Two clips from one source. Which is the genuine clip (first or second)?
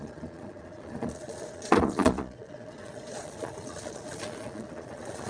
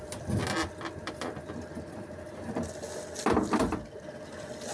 second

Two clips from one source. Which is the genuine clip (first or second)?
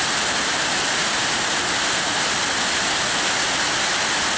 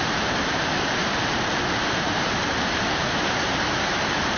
first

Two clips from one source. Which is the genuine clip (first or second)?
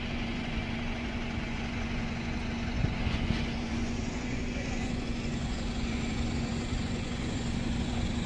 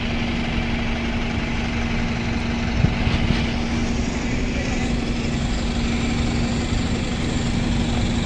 second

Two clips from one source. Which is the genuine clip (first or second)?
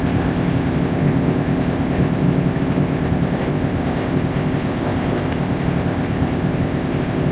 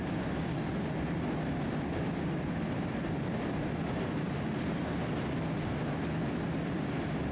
second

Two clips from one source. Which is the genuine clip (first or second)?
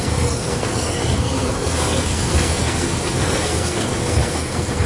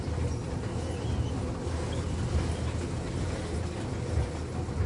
second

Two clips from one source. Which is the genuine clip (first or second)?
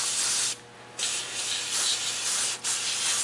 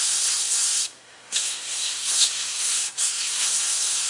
first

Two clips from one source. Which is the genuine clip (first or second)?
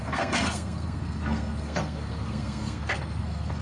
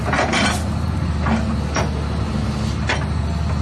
second